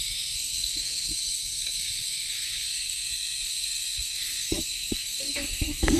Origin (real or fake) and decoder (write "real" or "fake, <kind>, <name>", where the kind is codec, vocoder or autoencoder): fake, codec, SNAC